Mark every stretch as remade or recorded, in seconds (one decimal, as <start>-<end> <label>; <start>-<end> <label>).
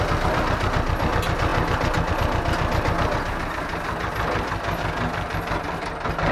0.0-6.3 recorded